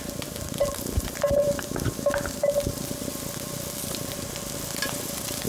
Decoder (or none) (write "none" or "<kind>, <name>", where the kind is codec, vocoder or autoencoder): none